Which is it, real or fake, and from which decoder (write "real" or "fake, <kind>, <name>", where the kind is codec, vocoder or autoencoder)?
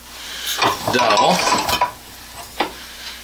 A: real